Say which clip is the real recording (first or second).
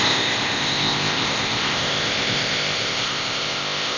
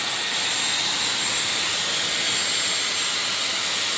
second